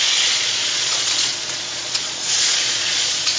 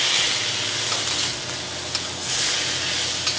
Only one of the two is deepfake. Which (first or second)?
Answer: first